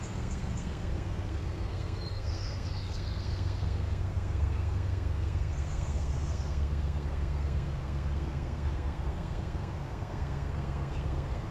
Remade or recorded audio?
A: remade